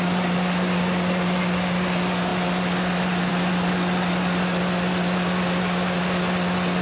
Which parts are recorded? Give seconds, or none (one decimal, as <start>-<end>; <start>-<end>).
0.0-6.8